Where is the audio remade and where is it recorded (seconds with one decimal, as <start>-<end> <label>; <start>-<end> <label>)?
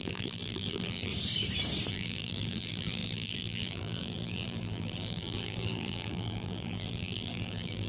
0.0-1.1 remade; 1.1-1.9 recorded; 1.9-7.9 remade